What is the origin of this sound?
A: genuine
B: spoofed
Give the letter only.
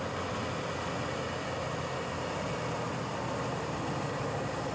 A